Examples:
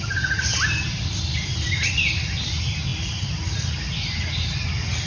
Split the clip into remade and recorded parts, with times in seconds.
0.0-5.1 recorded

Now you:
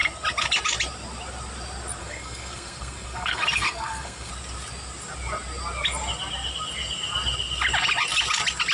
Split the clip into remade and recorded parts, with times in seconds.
0.0-2.0 recorded; 2.0-4.3 remade; 4.3-8.7 recorded